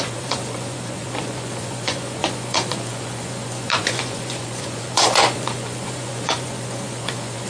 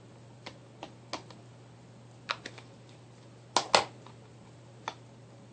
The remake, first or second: first